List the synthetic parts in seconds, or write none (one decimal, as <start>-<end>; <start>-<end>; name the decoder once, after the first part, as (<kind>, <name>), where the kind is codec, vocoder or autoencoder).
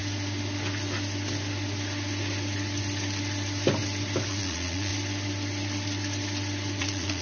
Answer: 4.3-4.9 (vocoder, Vocos); 6.8-7.2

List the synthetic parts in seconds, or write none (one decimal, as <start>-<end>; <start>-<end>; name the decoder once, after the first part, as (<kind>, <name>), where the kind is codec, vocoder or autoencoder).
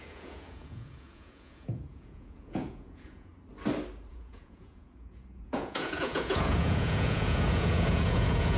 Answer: 0.0-3.3 (vocoder, Vocos); 4.1-8.6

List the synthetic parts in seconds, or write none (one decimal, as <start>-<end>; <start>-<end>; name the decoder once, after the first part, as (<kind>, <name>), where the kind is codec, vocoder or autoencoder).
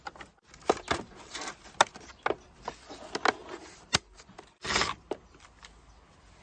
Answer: 3.4-5.9 (vocoder, BigVGAN v2)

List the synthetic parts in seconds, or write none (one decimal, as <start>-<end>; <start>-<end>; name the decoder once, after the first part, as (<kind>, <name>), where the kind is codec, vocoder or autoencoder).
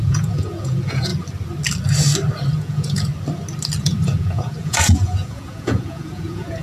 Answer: 0.0-1.1 (vocoder, Vocos); 2.5-3.1; 3.8-6.6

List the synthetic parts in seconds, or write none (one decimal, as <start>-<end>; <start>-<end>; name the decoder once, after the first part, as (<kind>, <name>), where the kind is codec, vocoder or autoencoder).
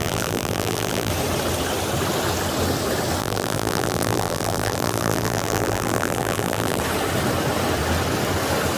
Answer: 0.0-1.1 (vocoder, BigVGAN v2); 3.2-6.8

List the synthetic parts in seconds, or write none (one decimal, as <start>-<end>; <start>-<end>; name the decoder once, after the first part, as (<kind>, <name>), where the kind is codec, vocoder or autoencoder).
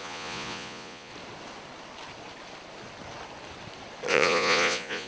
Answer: 0.0-1.1 (vocoder, Vocos); 4.1-5.1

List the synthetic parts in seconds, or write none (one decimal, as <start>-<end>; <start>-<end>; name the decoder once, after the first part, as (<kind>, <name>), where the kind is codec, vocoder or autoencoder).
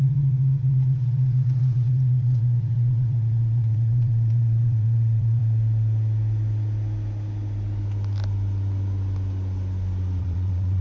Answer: 0.0-5.4 (vocoder, WaveNeXt); 10.2-10.8